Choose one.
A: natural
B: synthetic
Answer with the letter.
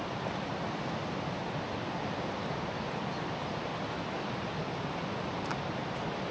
A